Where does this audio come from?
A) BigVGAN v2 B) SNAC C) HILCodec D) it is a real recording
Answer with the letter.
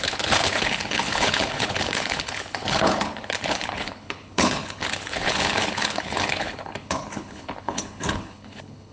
C